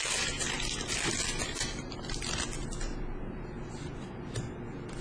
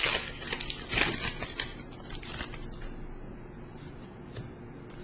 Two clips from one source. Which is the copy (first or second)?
first